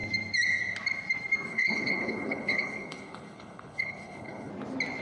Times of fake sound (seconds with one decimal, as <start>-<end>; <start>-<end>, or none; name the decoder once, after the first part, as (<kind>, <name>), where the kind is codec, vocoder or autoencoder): 1.5-4.5 (codec, HILCodec)